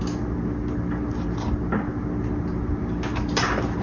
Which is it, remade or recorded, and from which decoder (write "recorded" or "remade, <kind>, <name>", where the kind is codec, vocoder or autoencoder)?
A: recorded